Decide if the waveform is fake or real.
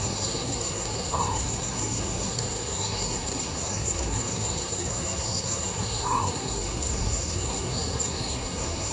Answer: fake